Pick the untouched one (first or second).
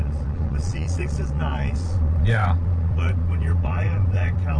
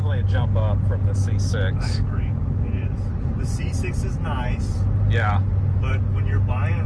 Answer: second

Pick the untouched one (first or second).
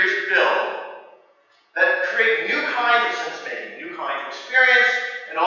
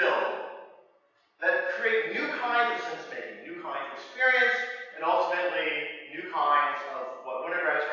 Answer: second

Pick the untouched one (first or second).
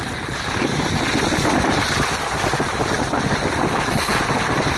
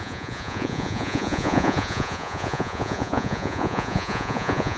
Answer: first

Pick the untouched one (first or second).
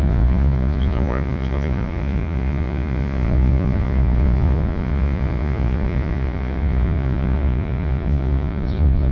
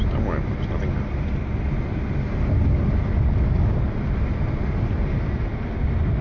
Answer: second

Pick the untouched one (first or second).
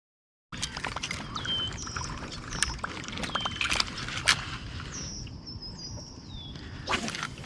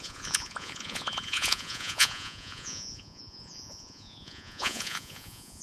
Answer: first